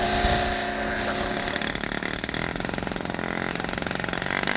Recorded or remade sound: recorded